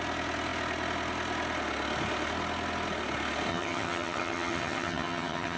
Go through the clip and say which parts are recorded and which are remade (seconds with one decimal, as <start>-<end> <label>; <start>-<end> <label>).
0.0-3.5 recorded; 3.5-5.6 remade